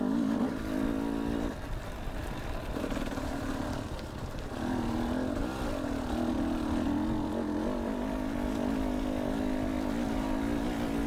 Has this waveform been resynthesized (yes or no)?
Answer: no